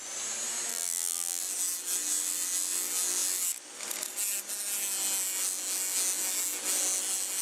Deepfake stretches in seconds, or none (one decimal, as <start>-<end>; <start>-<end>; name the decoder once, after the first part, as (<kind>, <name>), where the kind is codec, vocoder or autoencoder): 0.7-1.4 (vocoder, BigVGAN v2)